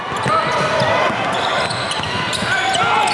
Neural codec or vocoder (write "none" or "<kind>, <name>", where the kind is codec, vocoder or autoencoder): none